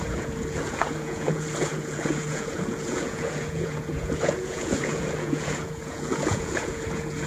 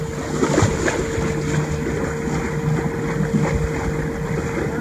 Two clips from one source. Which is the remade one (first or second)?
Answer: first